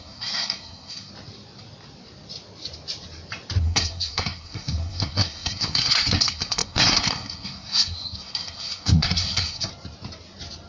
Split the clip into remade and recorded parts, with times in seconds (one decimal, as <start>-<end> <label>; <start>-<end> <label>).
0.0-1.1 remade; 1.1-3.6 recorded; 3.6-9.7 remade; 9.7-10.7 recorded